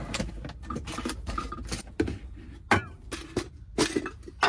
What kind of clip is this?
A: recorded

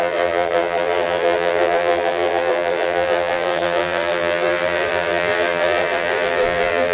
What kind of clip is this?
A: remade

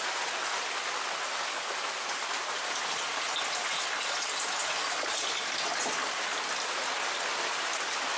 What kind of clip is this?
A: recorded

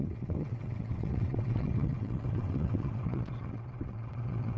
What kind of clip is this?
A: remade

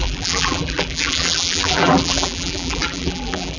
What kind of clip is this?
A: remade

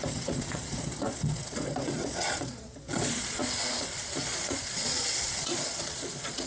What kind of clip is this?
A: remade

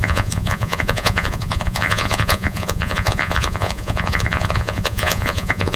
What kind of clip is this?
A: remade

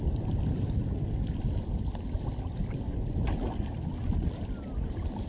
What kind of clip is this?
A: recorded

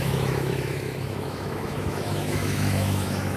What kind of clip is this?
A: remade